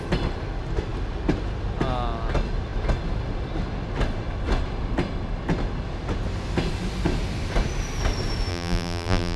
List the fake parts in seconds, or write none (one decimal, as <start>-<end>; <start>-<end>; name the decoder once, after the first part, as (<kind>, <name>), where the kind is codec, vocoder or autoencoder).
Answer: 8.5-9.4 (vocoder, BigVGAN v2)